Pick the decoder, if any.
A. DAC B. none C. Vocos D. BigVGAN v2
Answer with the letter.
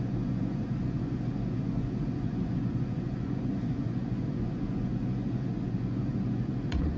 C